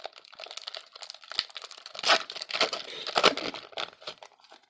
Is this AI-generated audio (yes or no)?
no